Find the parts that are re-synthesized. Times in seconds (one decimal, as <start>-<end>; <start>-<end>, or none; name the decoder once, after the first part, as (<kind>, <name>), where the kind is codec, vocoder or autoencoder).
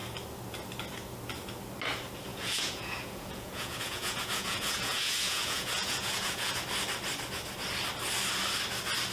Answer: 2.3-6.6 (vocoder, Vocos)